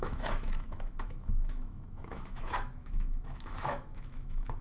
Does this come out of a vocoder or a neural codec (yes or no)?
yes